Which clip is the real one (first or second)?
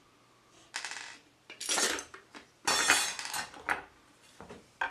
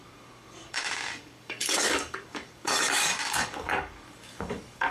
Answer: first